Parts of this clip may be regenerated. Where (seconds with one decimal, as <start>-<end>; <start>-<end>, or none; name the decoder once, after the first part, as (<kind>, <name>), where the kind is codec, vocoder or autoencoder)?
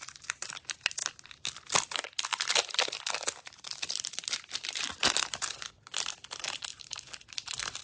none